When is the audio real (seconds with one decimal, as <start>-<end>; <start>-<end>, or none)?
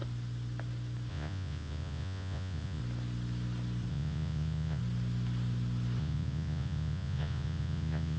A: 0.0-1.1; 2.8-3.9; 4.8-6.0